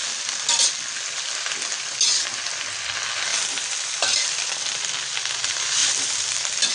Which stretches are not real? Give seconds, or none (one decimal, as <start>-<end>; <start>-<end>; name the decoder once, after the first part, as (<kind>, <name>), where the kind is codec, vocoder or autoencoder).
0.0-2.6 (vocoder, BigVGAN v2); 3.3-4.8; 5.8-6.7